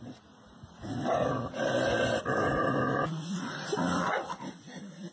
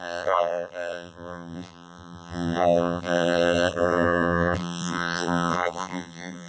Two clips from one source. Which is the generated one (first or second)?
second